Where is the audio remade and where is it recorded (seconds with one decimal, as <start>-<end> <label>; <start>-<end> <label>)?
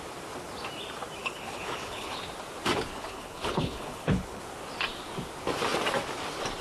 0.0-1.2 recorded; 1.2-2.2 remade; 2.2-2.9 recorded; 2.9-4.4 remade; 4.4-6.6 recorded